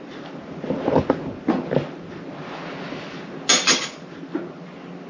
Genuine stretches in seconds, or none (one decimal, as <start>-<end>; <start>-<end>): 0.0-5.1